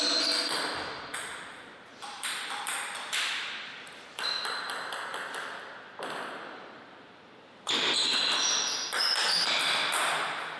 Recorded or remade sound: recorded